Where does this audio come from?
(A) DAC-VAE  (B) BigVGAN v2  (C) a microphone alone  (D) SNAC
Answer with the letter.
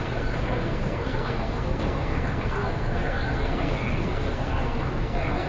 D